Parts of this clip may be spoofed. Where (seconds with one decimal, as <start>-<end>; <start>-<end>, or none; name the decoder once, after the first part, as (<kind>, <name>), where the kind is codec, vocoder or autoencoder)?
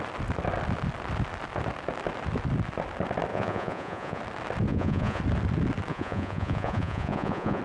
3.3-4.2 (vocoder, Vocos); 4.7-5.2; 5.9-7.6